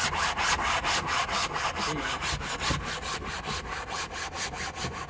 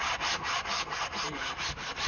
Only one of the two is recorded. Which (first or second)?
first